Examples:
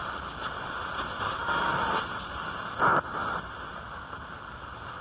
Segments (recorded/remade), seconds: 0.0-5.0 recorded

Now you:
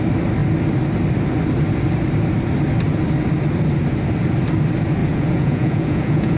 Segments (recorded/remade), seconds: 0.0-5.0 recorded; 5.0-6.4 remade

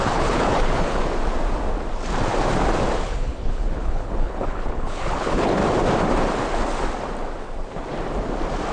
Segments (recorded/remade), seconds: 0.0-1.0 remade; 1.0-3.0 recorded; 3.0-5.6 remade; 5.6-8.7 recorded

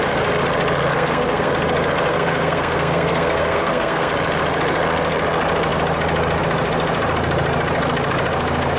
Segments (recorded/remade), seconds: 0.0-0.9 recorded; 0.9-1.5 remade; 1.5-2.1 recorded; 2.1-4.1 remade; 4.1-8.8 recorded

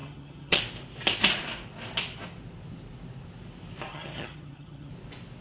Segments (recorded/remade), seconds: 0.0-0.6 remade; 0.6-3.9 recorded; 3.9-4.9 remade; 4.9-5.4 recorded

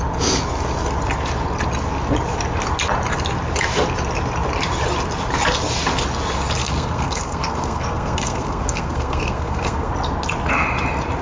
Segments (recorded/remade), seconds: 0.0-6.6 recorded; 6.6-9.9 remade; 9.9-11.2 recorded

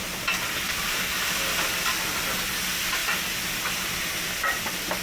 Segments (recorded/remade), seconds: 0.0-5.0 recorded